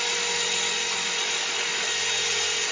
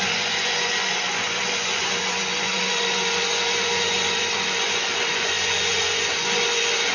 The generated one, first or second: second